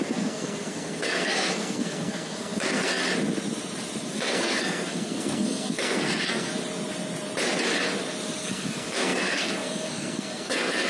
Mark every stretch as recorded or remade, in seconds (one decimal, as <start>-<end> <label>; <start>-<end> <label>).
0.0-3.0 remade; 3.0-4.1 recorded; 4.1-6.5 remade; 6.5-8.4 recorded; 8.4-10.9 remade

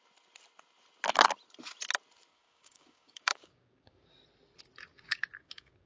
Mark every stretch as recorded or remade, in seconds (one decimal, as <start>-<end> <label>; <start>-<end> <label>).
0.0-2.3 recorded; 2.3-4.1 remade; 4.1-4.9 recorded; 4.9-5.9 remade

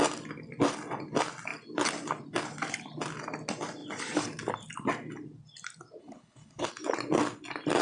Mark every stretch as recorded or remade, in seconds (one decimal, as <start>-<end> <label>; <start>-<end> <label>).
0.0-6.0 recorded; 6.0-6.7 remade; 6.7-7.8 recorded

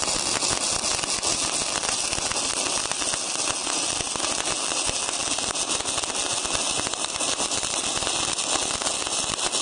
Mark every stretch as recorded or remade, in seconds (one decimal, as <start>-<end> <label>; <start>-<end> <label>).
0.0-9.6 recorded

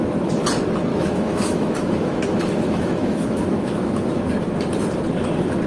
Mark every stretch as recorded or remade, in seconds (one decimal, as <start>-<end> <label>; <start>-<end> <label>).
0.0-0.9 recorded; 0.9-4.3 remade; 4.3-5.7 recorded

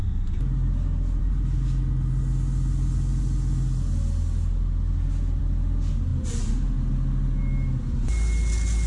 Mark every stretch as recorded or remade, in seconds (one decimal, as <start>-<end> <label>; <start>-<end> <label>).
0.0-8.9 recorded

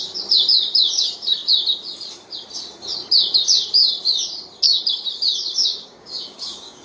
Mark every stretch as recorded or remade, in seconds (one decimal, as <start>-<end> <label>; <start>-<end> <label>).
0.0-5.6 recorded; 5.6-6.8 remade

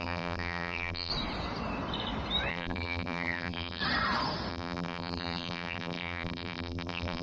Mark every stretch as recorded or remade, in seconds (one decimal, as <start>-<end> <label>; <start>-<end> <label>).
0.0-1.1 remade; 1.1-2.5 recorded; 2.5-3.8 remade; 3.8-4.5 recorded; 4.5-7.2 remade